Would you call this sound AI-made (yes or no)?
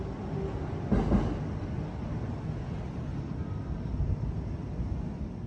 no